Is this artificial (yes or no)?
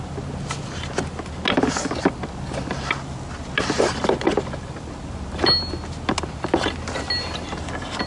no